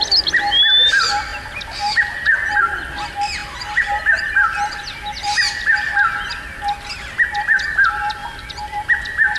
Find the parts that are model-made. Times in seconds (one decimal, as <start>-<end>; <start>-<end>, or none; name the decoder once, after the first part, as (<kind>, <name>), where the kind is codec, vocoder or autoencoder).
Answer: none